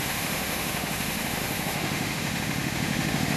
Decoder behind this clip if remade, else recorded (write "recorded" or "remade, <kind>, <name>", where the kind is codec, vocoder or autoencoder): remade, autoencoder, DAC-VAE